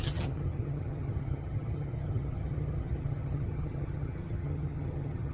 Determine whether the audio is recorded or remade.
remade